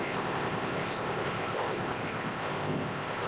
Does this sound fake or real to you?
fake